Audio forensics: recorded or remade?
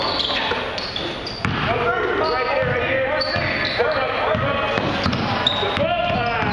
recorded